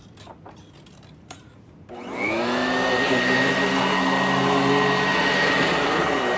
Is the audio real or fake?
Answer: real